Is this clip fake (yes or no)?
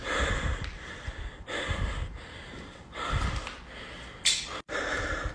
no